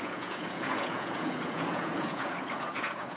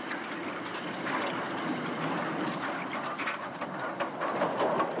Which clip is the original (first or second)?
second